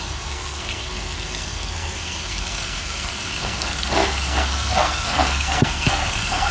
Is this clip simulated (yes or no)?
yes